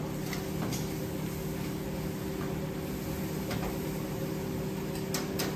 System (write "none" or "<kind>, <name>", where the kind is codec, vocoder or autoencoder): none